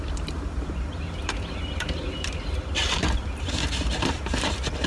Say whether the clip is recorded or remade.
remade